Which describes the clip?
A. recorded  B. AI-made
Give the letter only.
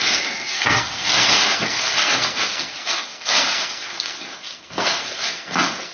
B